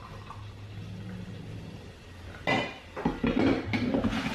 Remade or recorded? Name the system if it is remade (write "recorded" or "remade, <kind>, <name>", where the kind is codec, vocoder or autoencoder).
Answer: recorded